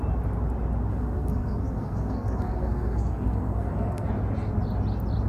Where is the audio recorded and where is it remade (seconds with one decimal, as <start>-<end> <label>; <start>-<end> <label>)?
0.0-0.9 recorded; 0.9-4.1 remade; 4.1-5.3 recorded

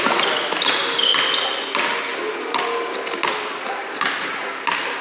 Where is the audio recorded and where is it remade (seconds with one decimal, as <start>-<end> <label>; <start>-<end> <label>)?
0.0-5.0 recorded

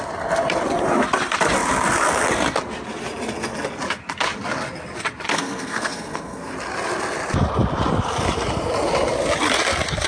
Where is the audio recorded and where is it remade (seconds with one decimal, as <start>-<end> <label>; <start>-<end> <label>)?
0.0-5.3 recorded; 5.3-6.5 remade; 6.5-10.1 recorded